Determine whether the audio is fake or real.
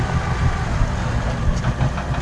real